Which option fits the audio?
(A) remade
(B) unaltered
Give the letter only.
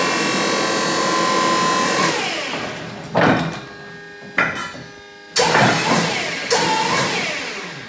B